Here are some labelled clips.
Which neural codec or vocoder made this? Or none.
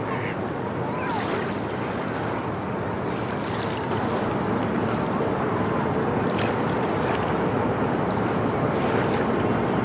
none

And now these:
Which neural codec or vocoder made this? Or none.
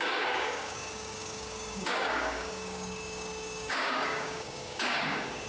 codec, DAC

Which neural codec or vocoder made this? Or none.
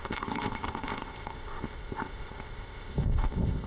codec, ZipCodec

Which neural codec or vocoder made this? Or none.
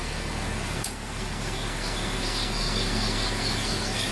codec, SNAC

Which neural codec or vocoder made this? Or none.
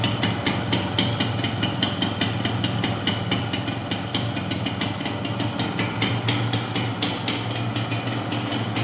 none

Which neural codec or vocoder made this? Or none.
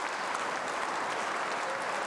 none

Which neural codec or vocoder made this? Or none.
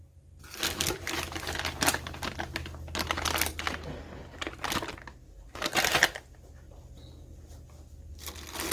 none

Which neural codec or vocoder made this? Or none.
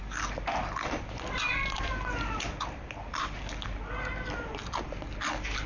none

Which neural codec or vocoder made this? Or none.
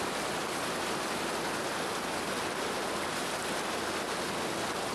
none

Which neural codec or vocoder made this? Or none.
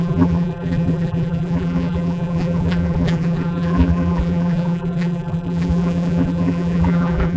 vocoder, BigVGAN v2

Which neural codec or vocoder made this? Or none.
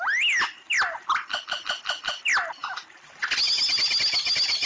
none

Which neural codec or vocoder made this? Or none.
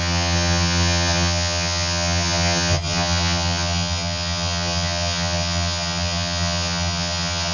vocoder, HiFi-GAN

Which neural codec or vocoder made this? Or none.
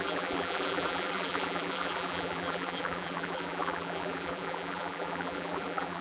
vocoder, BigVGAN v2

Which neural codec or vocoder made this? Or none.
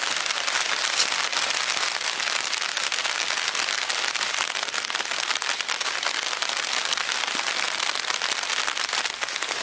none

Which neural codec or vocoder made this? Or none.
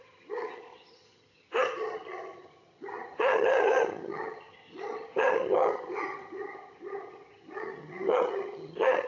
vocoder, HiFi-GAN